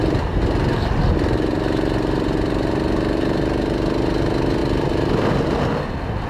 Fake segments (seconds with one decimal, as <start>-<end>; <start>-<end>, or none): none